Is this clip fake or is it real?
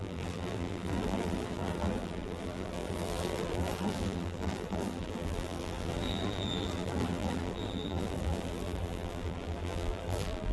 fake